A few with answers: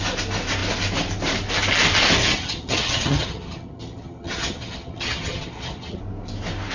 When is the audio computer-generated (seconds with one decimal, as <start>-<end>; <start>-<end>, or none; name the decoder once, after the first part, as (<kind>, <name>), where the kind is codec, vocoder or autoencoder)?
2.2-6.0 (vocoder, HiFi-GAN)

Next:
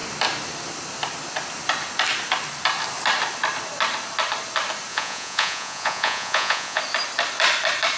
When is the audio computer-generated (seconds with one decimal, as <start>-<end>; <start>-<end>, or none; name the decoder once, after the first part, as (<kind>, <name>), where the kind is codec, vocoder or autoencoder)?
4.9-6.8 (vocoder, Vocos)

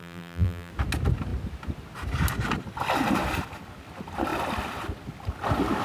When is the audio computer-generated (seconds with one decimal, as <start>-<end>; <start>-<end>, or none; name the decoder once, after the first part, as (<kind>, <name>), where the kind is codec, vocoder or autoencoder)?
0.0-0.7 (vocoder, BigVGAN v2)